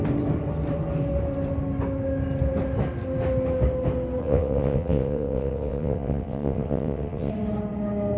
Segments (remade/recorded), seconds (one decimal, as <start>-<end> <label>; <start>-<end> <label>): 0.0-4.2 recorded; 4.2-7.3 remade; 7.3-8.2 recorded